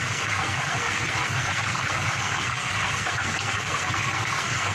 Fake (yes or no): yes